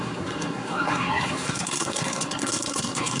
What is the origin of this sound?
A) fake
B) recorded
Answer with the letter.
A